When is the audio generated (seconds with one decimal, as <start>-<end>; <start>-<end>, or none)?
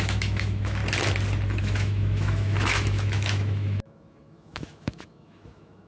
0.0-0.8; 1.6-5.9